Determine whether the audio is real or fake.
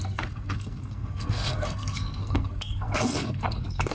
fake